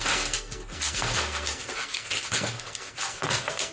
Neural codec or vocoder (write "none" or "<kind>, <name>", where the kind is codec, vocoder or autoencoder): codec, SNAC